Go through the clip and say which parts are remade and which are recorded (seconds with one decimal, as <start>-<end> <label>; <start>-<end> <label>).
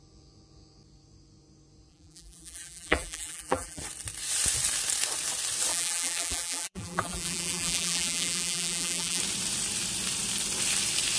0.0-1.9 recorded; 1.9-3.8 remade; 3.8-5.7 recorded; 5.7-9.2 remade; 9.2-11.2 recorded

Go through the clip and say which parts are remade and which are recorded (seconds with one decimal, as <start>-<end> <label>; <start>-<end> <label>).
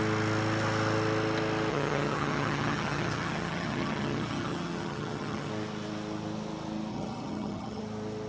0.0-1.7 recorded; 1.7-5.5 remade; 5.5-6.9 recorded; 6.9-7.8 remade; 7.8-8.3 recorded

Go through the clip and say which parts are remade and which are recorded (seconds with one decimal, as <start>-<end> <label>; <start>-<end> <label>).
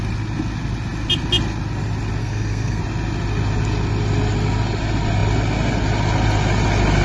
0.0-2.2 recorded; 2.2-2.8 remade; 2.8-7.0 recorded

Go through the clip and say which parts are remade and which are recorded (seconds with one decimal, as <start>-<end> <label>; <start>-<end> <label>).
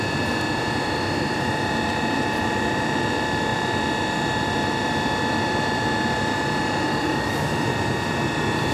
0.0-8.7 remade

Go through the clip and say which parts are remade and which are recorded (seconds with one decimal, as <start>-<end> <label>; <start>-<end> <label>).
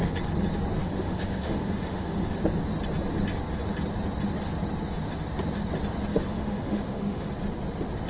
0.0-0.8 recorded; 0.8-2.4 remade; 2.4-6.1 recorded; 6.1-7.3 remade; 7.3-8.1 recorded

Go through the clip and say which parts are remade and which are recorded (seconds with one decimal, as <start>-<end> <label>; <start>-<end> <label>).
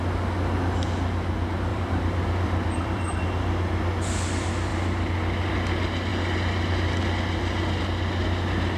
0.0-1.7 recorded; 1.7-3.2 remade; 3.2-8.8 recorded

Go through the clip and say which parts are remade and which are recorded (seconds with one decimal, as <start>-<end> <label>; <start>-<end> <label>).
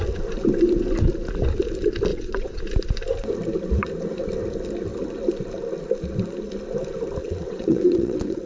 0.0-2.1 recorded; 2.1-2.6 remade; 2.6-7.2 recorded; 7.2-8.5 remade